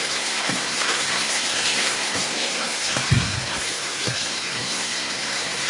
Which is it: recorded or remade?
remade